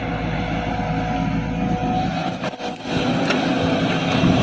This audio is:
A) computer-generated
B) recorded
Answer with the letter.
B